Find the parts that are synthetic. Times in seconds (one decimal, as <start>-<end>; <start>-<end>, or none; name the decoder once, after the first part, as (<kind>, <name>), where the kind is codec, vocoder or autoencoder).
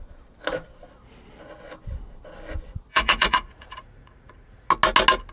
2.9-4.7 (vocoder, Vocos)